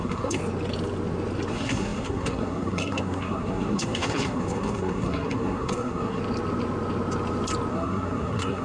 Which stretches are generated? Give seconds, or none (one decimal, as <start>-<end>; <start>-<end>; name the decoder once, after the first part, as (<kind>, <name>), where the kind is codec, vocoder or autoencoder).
0.0-0.4 (codec, SNAC); 1.5-6.2; 7.7-8.6